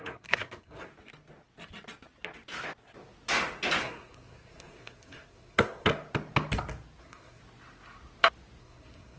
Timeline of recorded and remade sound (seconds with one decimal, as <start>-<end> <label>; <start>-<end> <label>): 0.0-0.9 remade; 0.9-3.8 recorded; 3.8-5.9 remade; 5.9-7.0 recorded; 7.0-7.4 remade; 7.4-8.6 recorded; 8.6-9.2 remade

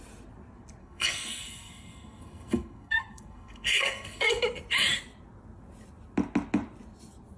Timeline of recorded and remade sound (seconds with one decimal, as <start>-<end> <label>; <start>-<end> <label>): 0.0-0.8 recorded; 0.8-4.4 remade; 4.4-7.4 recorded